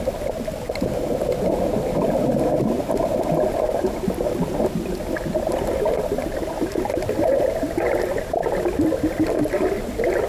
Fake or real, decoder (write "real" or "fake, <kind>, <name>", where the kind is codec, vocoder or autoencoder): real